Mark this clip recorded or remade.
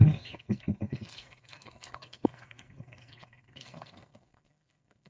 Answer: remade